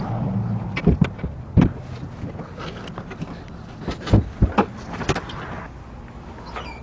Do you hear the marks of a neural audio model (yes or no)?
no